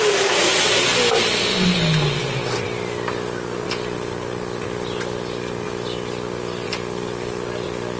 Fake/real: real